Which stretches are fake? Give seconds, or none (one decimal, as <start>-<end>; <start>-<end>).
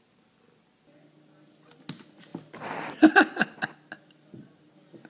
none